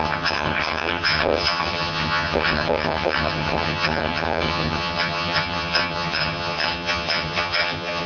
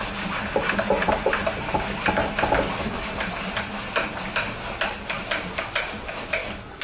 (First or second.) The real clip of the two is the second